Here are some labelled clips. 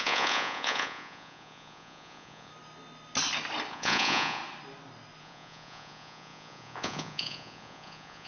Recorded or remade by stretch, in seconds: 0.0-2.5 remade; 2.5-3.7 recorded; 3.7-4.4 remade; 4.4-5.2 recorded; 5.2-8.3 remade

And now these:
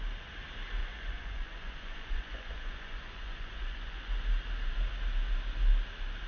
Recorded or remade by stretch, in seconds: 0.0-0.8 recorded; 0.8-4.1 remade; 4.1-6.3 recorded

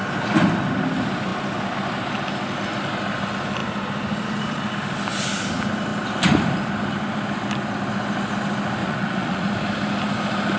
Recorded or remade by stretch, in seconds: 0.0-8.8 recorded; 8.8-9.5 remade; 9.5-10.6 recorded

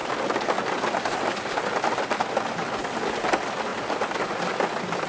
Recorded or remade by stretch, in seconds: 0.0-5.1 recorded